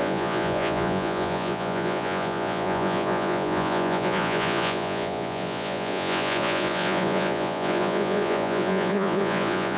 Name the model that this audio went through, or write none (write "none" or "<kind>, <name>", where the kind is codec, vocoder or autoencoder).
vocoder, Vocos